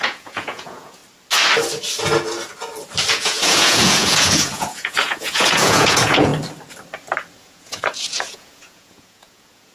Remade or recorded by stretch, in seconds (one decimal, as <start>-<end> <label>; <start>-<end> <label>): 0.0-1.0 remade; 1.0-3.1 recorded; 3.1-6.3 remade; 6.3-7.4 recorded; 7.4-9.7 remade